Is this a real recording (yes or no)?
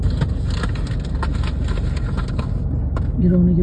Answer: yes